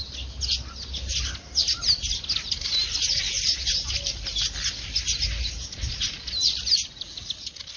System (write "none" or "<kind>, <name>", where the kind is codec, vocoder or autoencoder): none